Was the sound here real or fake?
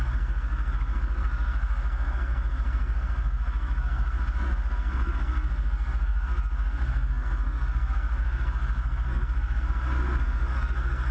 fake